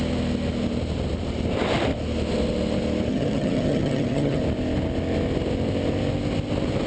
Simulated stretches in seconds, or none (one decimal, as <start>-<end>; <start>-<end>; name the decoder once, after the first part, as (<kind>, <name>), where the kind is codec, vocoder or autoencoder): 3.1-4.4 (vocoder, HiFi-GAN)